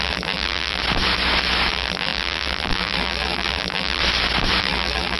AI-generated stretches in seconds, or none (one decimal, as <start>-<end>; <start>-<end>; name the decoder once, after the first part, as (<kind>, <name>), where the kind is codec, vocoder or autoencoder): 0.0-0.8 (vocoder, BigVGAN v2); 1.7-4.0; 4.6-5.2